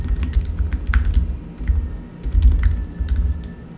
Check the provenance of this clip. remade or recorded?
recorded